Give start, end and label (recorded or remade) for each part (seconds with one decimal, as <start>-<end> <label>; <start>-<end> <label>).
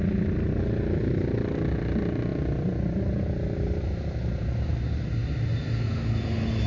0.0-6.7 recorded